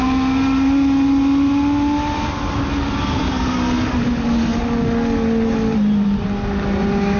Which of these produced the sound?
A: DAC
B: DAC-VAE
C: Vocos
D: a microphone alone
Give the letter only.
D